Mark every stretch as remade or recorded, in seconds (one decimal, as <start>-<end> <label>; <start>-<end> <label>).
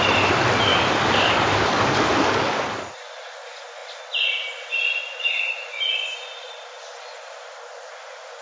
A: 0.0-0.7 recorded; 0.7-2.8 remade; 2.8-8.4 recorded